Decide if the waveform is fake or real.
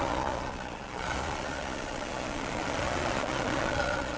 fake